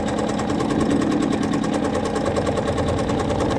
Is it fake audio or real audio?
real